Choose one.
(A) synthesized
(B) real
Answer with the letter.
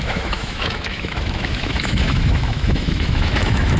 A